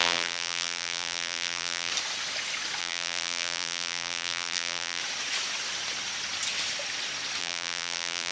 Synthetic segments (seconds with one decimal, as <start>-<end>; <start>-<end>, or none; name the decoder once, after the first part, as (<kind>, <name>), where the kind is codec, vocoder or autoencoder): 0.0-1.9 (vocoder, BigVGAN v2); 2.8-5.0; 7.4-8.3